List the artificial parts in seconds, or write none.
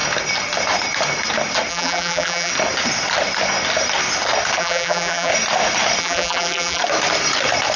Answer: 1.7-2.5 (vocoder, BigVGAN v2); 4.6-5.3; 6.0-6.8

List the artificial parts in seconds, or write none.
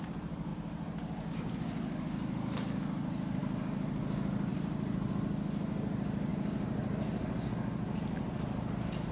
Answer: 4.5-5.1 (vocoder, BigVGAN v2); 6.3-7.5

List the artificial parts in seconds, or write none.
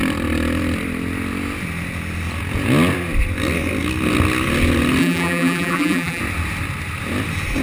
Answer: 5.0-6.2 (vocoder, BigVGAN v2)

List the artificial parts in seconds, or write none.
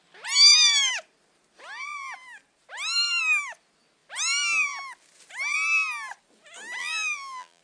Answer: 6.8-7.6 (vocoder, BigVGAN v2)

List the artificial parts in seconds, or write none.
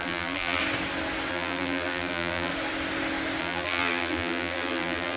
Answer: 0.0-0.6 (vocoder, BigVGAN v2); 1.3-2.5; 3.4-5.2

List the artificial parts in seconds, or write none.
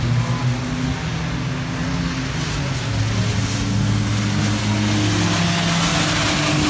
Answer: none